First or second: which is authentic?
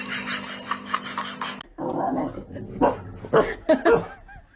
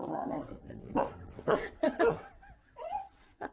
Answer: first